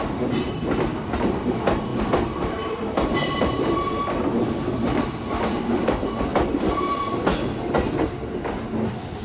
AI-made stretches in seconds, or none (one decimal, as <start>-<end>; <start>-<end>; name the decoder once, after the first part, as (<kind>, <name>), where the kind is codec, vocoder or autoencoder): none